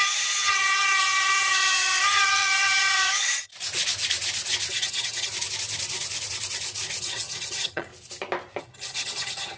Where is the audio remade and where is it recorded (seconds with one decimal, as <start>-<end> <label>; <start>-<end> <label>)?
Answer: 0.0-3.5 remade; 3.5-4.7 recorded; 4.7-5.3 remade; 5.3-7.0 recorded; 7.0-7.9 remade; 7.9-8.6 recorded; 8.6-9.6 remade